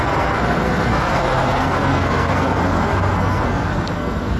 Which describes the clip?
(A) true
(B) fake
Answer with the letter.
B